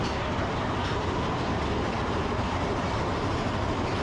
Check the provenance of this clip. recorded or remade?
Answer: recorded